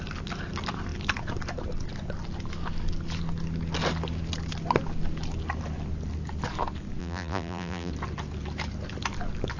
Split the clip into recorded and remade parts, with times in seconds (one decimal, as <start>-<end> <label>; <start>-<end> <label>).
0.0-7.0 recorded; 7.0-7.9 remade; 7.9-9.6 recorded

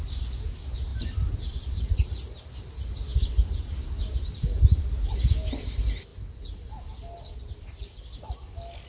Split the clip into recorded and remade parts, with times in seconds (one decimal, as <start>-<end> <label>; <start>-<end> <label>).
0.0-0.9 recorded; 0.9-2.6 remade; 2.6-3.1 recorded; 3.1-5.1 remade; 5.1-8.9 recorded

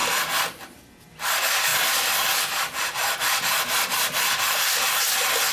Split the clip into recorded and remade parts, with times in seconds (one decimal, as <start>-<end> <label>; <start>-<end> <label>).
0.0-1.7 recorded; 1.7-5.0 remade; 5.0-5.5 recorded

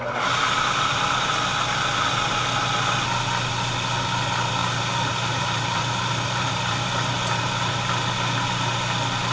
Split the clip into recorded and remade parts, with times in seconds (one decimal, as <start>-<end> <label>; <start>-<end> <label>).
0.0-4.6 recorded; 4.6-7.8 remade; 7.8-9.3 recorded

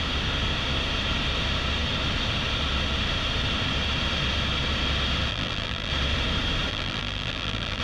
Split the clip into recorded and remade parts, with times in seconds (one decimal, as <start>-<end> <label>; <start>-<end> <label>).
0.0-5.3 recorded; 5.3-5.9 remade; 5.9-6.7 recorded; 6.7-7.8 remade

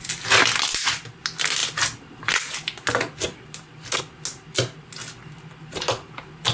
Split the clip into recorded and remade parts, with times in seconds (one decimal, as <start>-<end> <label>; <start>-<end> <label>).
0.0-6.5 recorded

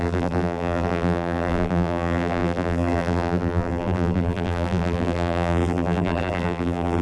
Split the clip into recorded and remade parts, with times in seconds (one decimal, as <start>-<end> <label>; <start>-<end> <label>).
0.0-7.0 remade